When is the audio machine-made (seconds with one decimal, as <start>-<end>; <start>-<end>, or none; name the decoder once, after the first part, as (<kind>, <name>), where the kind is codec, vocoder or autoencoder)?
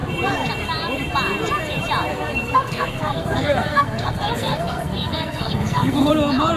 2.1-6.1 (codec, SNAC)